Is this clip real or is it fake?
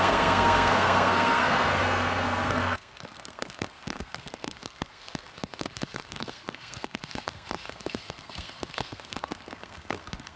fake